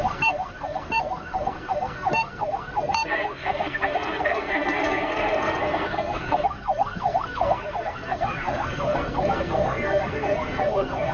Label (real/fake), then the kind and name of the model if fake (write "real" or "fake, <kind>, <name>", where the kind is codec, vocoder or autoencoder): fake, codec, SNAC